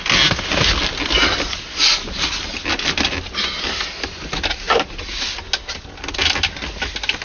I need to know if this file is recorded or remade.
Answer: recorded